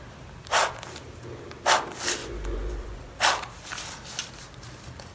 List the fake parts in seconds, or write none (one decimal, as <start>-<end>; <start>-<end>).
2.2-3.1